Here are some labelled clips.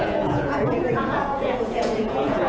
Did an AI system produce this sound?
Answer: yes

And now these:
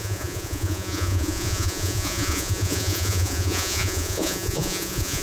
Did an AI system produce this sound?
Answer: yes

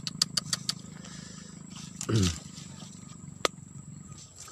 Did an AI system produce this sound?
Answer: no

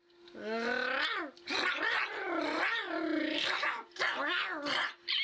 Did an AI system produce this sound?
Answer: no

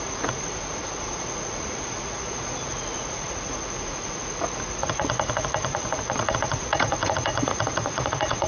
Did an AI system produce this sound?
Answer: yes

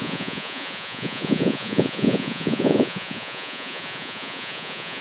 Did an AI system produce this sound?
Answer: yes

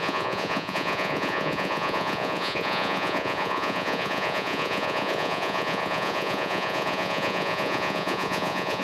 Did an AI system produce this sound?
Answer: yes